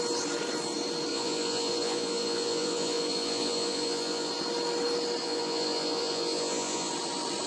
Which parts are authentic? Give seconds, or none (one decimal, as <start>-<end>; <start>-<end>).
0.0-1.1; 4.3-5.2; 6.9-7.5